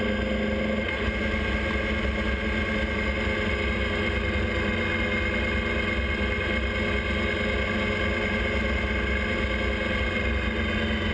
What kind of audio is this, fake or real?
real